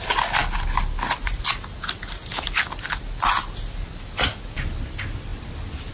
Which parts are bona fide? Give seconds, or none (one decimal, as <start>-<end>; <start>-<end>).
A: 0.0-5.9